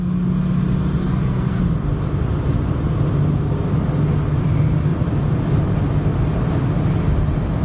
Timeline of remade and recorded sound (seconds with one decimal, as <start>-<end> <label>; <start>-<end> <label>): 0.0-1.0 recorded; 1.0-1.6 remade; 1.6-7.6 recorded